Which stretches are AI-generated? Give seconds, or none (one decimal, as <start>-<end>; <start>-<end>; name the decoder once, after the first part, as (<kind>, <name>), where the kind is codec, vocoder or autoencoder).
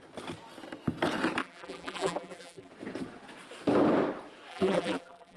1.4-2.7 (vocoder, BigVGAN v2); 4.5-5.4